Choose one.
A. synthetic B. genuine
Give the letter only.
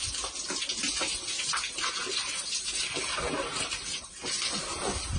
B